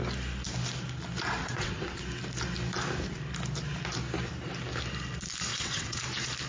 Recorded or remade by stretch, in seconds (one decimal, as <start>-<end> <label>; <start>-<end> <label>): 0.0-1.4 recorded; 1.4-2.0 remade; 2.0-5.5 recorded; 5.5-6.0 remade; 6.0-6.5 recorded